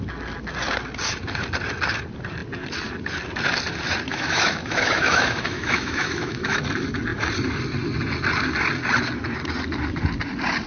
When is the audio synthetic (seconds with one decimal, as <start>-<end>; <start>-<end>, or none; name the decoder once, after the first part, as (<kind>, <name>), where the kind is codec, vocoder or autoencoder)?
4.1-6.6 (autoencoder, DAC-VAE)